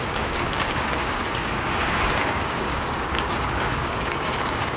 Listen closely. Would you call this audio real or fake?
fake